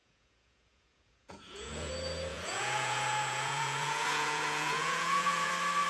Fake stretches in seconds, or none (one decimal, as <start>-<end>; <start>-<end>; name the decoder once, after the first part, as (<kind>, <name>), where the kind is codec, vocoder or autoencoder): 0.0-1.9 (vocoder, Vocos); 2.3-5.5